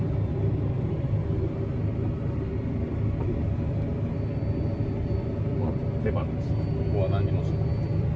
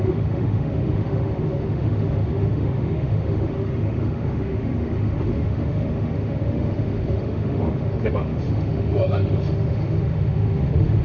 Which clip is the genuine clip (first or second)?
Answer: first